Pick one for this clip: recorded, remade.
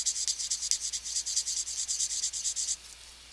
recorded